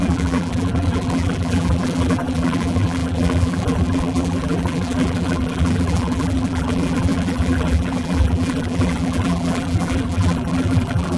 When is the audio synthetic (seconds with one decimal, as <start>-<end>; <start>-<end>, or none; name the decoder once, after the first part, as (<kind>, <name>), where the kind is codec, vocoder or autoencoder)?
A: 0.0-11.2 (vocoder, BigVGAN v2)